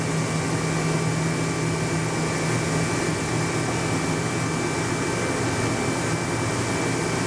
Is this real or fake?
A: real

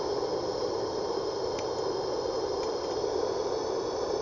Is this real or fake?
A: real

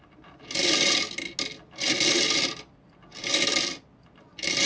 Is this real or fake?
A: real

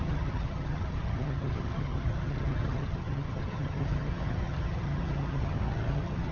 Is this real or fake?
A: fake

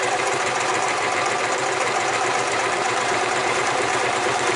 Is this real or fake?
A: fake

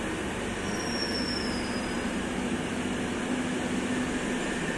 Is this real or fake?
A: real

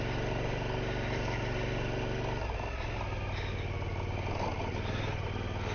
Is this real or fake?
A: real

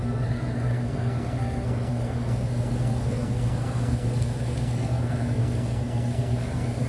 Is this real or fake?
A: fake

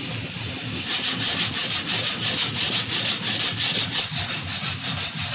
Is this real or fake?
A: real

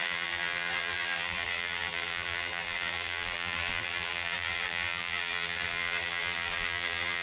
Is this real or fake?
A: fake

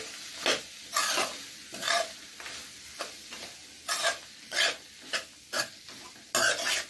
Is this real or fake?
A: real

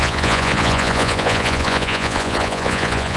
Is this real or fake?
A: fake